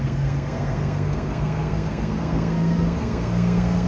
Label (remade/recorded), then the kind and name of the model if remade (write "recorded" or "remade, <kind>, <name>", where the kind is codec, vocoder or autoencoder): remade, codec, SNAC